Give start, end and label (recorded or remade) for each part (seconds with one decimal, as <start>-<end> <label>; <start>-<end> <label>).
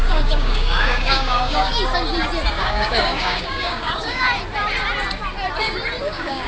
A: 0.0-1.7 remade; 1.7-2.5 recorded; 2.5-4.2 remade; 4.2-6.0 recorded; 6.0-6.5 remade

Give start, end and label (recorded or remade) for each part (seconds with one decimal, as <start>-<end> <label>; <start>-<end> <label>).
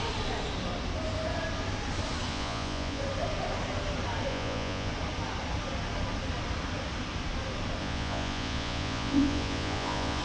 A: 0.0-2.3 recorded; 2.3-3.0 remade; 3.0-4.3 recorded; 4.3-4.9 remade; 4.9-7.8 recorded; 7.8-10.2 remade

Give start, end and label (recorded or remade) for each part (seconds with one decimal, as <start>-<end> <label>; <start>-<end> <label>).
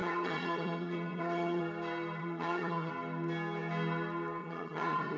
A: 0.0-1.6 remade; 1.6-2.2 recorded; 2.2-2.9 remade; 2.9-4.4 recorded; 4.4-5.2 remade